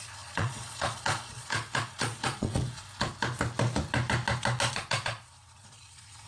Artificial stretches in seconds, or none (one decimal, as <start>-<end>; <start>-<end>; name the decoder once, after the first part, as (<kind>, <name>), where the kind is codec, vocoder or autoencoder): 0.0-2.6 (vocoder, Vocos); 4.7-6.3

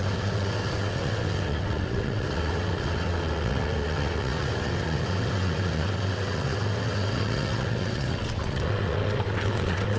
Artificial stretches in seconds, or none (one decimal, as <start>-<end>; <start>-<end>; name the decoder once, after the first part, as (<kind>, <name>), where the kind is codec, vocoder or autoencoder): 0.0-10.0 (vocoder, WaveNeXt)

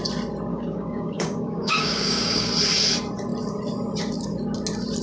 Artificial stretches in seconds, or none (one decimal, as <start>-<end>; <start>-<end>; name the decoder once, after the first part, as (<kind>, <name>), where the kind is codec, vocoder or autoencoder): 0.5-2.5 (codec, DAC)

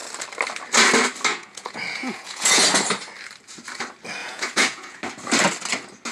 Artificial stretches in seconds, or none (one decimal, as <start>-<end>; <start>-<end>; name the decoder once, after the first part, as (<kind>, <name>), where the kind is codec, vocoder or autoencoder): 1.3-2.6 (vocoder, Vocos); 4.2-5.0

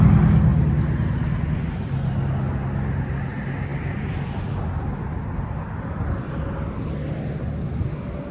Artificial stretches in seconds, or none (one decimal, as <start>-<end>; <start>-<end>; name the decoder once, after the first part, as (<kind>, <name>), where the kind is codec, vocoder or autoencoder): none

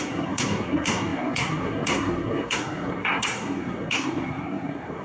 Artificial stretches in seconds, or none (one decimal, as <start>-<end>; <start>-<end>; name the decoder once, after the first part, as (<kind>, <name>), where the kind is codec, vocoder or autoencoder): 0.0-5.0 (codec, SNAC)

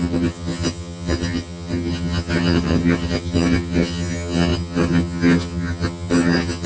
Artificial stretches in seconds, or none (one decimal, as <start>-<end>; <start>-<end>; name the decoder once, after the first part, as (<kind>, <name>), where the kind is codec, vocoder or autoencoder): 0.0-6.7 (vocoder, HiFi-GAN)

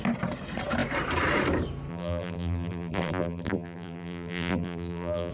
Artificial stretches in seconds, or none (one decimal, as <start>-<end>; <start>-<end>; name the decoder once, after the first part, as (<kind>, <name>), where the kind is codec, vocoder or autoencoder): 1.9-5.3 (vocoder, BigVGAN v2)